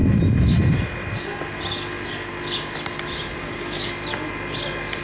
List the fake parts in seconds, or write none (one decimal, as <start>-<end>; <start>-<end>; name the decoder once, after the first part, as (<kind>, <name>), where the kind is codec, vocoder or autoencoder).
3.4-3.9 (codec, DAC)